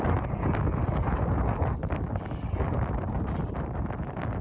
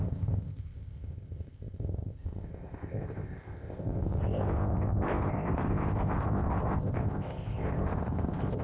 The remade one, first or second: second